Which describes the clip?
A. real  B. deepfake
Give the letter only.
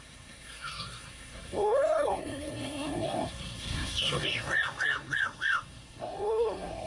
B